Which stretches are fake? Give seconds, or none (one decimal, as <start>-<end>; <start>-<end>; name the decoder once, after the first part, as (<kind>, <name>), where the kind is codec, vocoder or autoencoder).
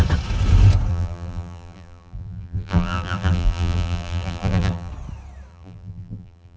0.9-4.9 (vocoder, BigVGAN v2); 5.5-6.6